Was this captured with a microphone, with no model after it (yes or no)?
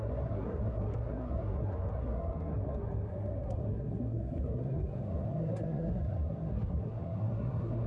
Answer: no